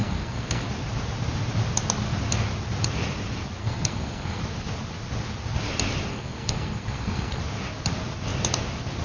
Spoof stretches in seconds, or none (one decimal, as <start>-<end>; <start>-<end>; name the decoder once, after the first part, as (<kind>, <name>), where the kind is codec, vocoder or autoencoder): 0.0-0.7 (codec, SNAC); 3.6-4.4; 6.1-7.4